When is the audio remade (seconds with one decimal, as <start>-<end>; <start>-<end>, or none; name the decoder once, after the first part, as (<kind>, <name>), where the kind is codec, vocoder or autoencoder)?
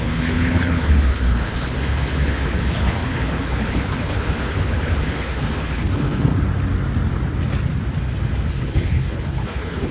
0.0-6.3 (codec, HILCodec); 8.5-9.9